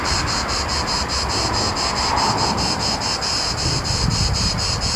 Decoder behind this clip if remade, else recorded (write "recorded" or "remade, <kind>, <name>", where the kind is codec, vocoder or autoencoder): recorded